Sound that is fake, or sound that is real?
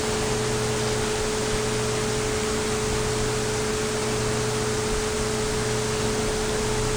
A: real